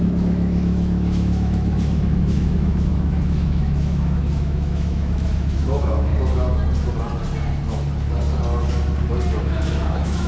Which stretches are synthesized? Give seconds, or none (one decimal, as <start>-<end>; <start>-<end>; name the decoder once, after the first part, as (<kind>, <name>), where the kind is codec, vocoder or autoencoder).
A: 0.0-6.1 (autoencoder, DAC-VAE); 9.4-10.3